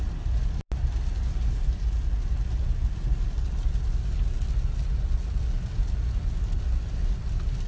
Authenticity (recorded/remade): recorded